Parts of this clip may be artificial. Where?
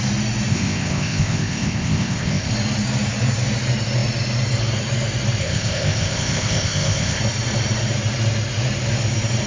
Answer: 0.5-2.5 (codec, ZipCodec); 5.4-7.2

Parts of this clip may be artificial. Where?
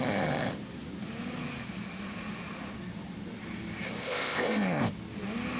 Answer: 4.0-4.9 (codec, ZipCodec)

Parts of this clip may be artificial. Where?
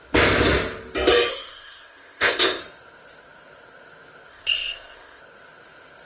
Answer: 1.3-2.6 (codec, ZipCodec); 4.3-5.2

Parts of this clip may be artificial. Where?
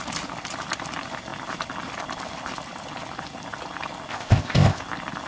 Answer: 4.1-4.8 (codec, ZipCodec)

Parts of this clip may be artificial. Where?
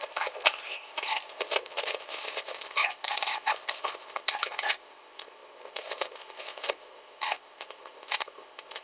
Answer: 0.0-8.8 (codec, ZipCodec)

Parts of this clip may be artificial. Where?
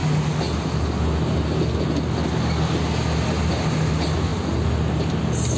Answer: none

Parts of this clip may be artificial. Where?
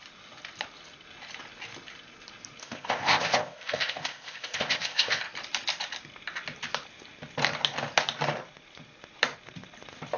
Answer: 2.6-5.2 (codec, ZipCodec)